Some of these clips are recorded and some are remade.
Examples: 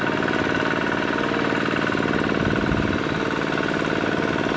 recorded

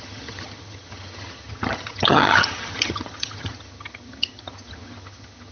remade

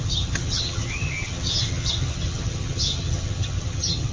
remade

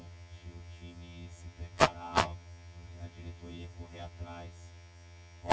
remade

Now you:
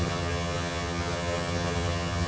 remade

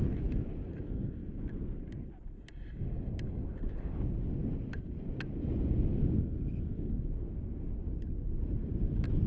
recorded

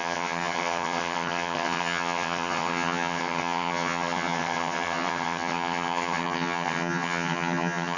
remade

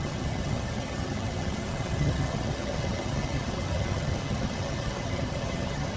remade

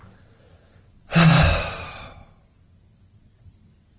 recorded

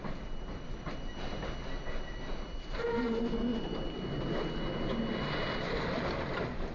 recorded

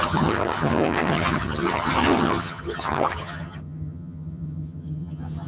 remade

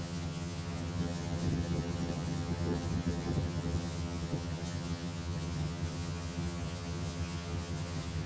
remade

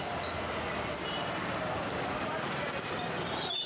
recorded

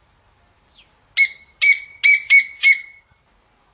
recorded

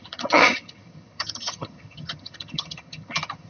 remade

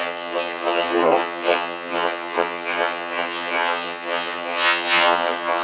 remade